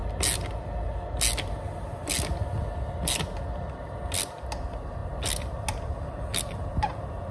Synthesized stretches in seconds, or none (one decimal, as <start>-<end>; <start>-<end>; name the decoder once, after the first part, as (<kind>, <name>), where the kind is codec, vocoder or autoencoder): none